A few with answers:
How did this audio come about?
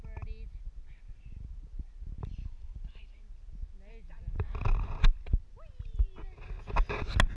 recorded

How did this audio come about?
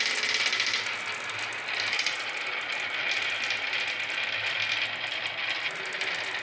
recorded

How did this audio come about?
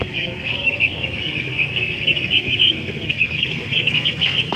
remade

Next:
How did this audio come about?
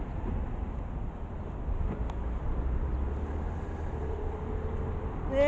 recorded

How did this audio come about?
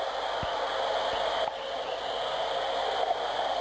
recorded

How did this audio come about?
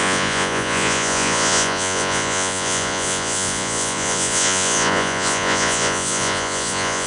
remade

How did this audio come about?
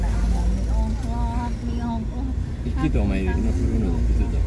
recorded